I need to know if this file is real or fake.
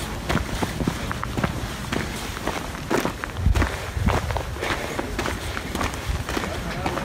real